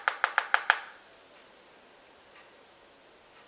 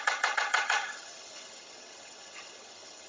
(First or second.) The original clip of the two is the first